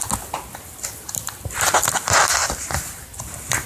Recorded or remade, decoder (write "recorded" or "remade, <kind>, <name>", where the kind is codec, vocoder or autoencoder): recorded